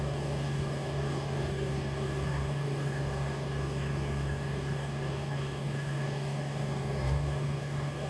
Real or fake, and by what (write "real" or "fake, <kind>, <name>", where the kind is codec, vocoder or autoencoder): fake, codec, DAC